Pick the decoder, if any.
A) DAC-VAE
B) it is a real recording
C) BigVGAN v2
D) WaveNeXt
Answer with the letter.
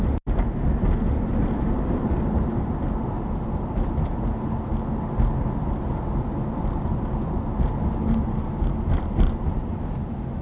B